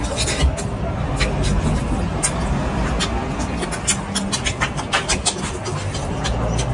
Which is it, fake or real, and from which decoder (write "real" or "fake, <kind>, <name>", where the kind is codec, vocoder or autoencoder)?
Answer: real